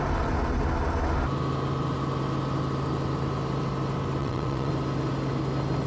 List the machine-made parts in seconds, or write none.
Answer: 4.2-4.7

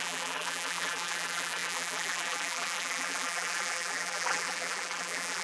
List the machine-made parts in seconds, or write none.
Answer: 0.0-5.4

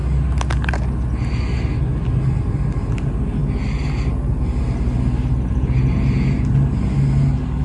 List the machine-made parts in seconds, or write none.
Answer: none